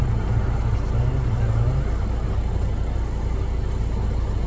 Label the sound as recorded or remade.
recorded